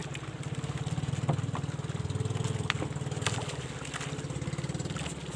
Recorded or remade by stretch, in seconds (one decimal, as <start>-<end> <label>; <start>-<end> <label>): 0.0-5.4 recorded